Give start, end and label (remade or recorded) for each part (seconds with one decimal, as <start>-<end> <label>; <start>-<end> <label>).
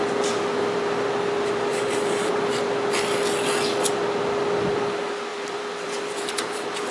0.0-1.7 recorded; 1.7-2.6 remade; 2.6-5.3 recorded; 5.3-6.9 remade